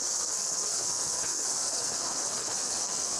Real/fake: fake